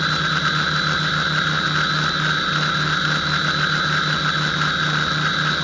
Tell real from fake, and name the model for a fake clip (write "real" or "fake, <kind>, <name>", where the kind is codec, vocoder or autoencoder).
real